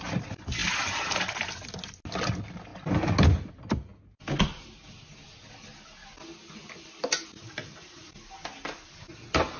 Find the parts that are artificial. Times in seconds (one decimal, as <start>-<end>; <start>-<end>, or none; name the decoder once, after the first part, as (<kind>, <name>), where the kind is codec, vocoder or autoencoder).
none